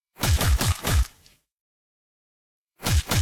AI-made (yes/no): yes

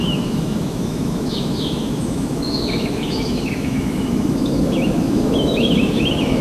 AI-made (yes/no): yes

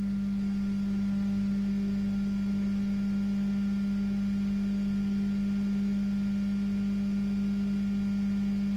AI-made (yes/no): no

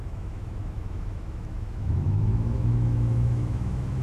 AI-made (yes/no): yes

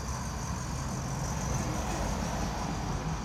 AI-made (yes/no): no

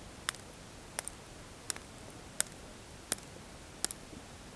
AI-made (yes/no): no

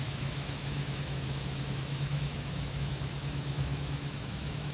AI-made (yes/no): yes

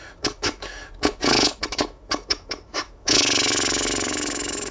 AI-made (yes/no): yes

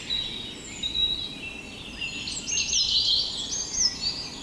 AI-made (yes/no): no